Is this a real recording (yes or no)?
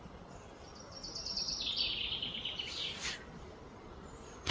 yes